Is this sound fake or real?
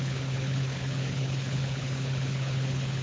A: fake